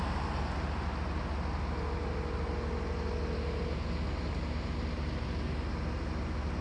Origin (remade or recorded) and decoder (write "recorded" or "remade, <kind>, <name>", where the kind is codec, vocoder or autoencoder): recorded